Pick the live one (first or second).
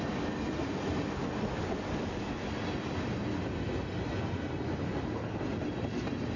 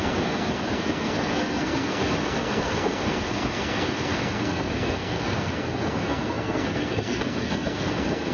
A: first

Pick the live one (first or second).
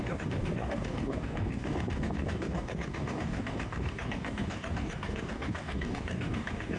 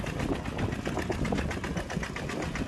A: second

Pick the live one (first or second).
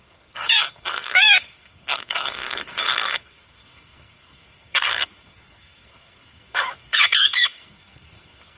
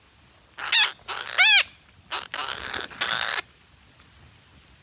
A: second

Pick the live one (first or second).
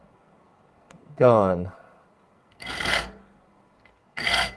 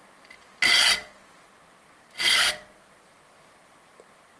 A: second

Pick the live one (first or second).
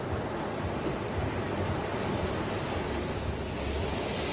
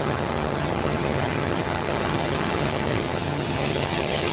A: first